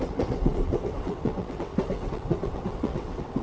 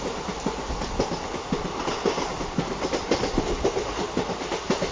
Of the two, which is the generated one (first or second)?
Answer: first